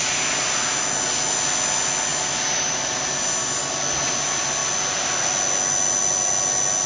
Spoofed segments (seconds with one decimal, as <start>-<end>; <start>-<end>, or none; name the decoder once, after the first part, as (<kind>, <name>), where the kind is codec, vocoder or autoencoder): none